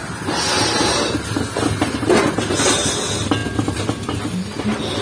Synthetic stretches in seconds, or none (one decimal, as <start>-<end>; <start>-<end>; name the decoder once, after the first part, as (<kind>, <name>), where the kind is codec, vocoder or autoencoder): none